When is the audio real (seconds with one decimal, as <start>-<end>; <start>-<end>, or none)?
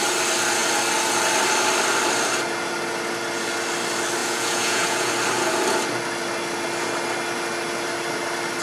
0.0-4.2; 5.1-8.6